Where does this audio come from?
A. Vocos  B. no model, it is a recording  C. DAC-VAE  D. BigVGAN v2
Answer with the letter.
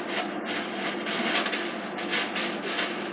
B